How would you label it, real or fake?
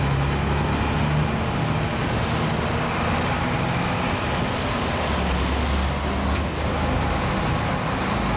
real